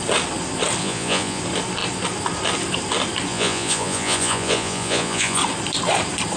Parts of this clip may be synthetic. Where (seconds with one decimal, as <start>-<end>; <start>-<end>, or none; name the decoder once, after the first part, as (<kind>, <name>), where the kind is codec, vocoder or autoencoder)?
0.8-1.4 (vocoder, Vocos); 3.3-5.4